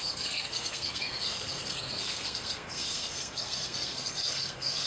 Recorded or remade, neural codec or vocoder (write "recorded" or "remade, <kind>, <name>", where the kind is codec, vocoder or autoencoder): remade, codec, SNAC